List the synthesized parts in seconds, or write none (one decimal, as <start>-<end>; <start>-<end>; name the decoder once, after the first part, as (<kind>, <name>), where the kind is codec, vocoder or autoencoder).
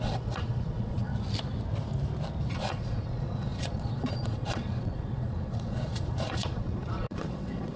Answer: 0.0-1.1 (vocoder, Vocos); 2.5-7.8